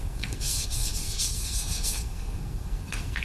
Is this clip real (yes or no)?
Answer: no